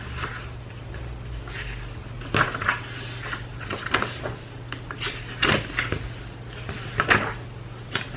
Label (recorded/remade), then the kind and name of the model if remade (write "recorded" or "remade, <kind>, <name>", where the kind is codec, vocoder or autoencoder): recorded